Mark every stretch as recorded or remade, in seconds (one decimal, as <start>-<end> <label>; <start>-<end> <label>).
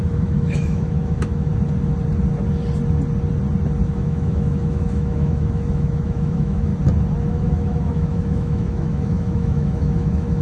0.0-1.5 remade; 1.5-3.9 recorded; 3.9-6.7 remade; 6.7-7.3 recorded; 7.3-10.4 remade